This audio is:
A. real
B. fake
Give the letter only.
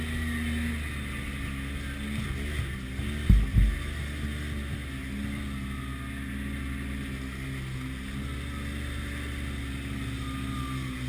A